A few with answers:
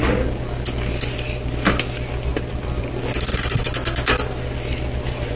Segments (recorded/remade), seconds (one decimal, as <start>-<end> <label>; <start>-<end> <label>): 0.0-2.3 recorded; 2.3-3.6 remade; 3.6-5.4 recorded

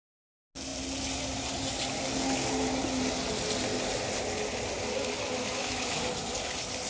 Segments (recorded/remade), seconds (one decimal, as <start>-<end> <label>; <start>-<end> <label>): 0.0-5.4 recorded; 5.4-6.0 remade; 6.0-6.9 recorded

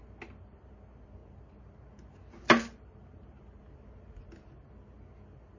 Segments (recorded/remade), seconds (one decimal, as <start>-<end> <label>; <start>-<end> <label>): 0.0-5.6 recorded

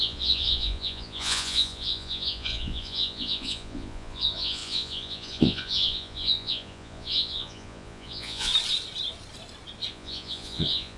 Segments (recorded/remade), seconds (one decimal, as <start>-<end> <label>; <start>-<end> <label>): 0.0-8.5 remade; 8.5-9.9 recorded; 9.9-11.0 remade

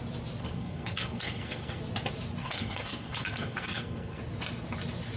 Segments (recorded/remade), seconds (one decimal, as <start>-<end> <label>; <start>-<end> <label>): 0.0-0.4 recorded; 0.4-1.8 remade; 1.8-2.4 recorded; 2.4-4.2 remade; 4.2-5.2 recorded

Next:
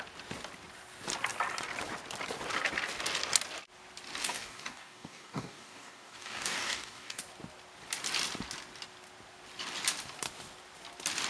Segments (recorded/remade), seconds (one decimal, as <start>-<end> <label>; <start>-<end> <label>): 0.0-4.2 recorded; 4.2-7.2 remade; 7.2-11.3 recorded

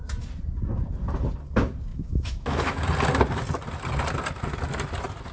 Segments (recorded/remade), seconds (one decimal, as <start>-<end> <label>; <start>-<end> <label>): 0.0-1.9 recorded; 1.9-2.8 remade; 2.8-5.3 recorded